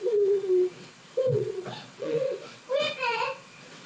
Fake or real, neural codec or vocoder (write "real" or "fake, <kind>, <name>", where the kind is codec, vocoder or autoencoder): fake, vocoder, WaveNeXt